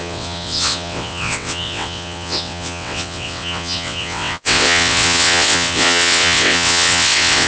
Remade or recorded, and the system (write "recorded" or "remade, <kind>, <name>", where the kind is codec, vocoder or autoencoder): remade, vocoder, WaveNeXt